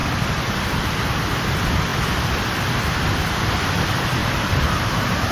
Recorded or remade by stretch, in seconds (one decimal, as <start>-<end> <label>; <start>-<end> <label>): 0.0-4.2 recorded; 4.2-5.3 remade